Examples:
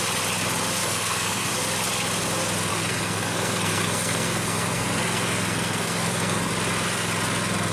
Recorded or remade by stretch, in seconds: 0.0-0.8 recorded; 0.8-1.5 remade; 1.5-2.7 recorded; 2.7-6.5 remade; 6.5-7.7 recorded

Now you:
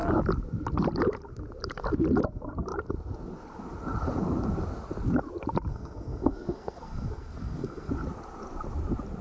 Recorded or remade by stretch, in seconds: 0.0-5.7 recorded; 5.7-7.9 remade; 7.9-9.2 recorded